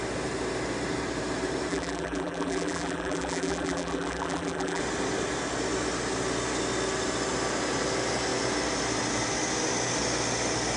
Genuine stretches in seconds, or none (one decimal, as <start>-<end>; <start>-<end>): 0.0-1.7; 4.8-10.8